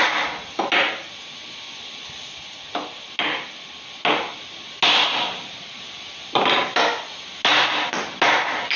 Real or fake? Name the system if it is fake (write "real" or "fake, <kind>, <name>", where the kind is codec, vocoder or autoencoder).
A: real